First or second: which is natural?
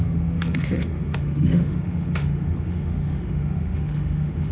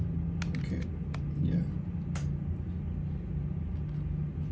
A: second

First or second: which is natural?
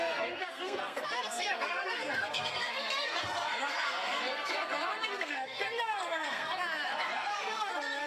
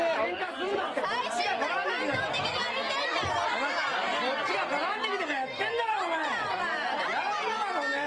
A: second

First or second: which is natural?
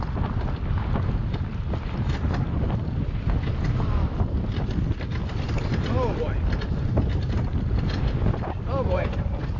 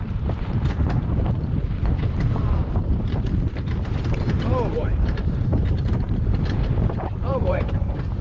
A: first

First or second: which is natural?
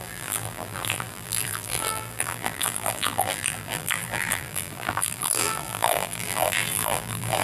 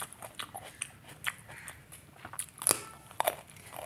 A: second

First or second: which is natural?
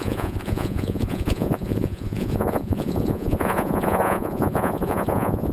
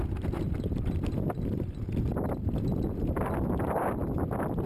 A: second